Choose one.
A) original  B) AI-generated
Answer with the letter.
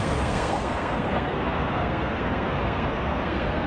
B